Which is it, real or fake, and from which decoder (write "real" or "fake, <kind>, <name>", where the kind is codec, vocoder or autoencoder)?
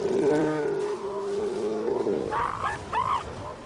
fake, vocoder, BigVGAN v2